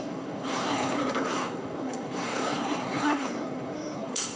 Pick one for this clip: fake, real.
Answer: fake